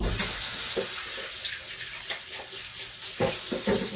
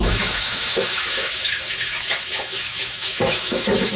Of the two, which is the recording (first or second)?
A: first